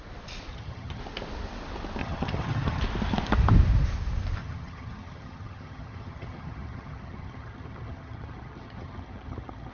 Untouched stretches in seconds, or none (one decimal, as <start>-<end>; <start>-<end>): 0.0-0.5; 1.0-2.0; 2.8-4.4